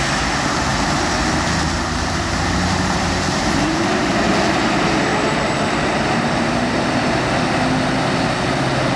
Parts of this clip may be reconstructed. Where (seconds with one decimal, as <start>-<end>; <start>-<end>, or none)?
0.7-4.3; 5.1-7.2